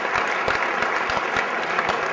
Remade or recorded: recorded